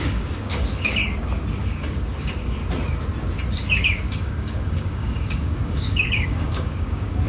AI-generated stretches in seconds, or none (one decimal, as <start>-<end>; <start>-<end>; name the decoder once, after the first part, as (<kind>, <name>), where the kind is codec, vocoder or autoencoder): 0.0-1.0 (codec, DAC); 1.6-2.6; 3.5-7.3